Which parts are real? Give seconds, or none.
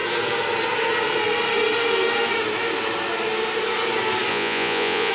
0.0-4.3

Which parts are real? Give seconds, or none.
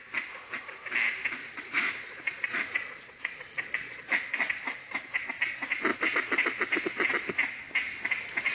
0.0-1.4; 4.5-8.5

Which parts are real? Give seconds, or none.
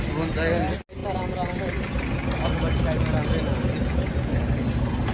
0.0-5.1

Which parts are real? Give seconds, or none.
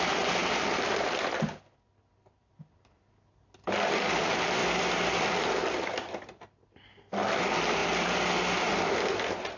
0.0-9.6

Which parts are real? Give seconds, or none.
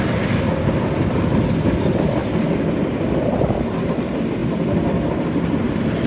0.0-6.1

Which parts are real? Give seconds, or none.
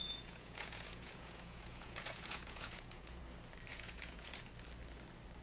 3.2-3.7; 4.4-5.4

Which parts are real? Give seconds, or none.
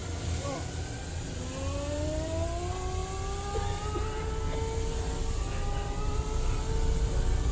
0.0-7.5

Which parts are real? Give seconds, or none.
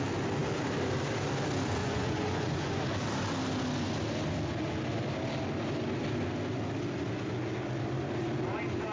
0.0-1.8; 2.8-8.9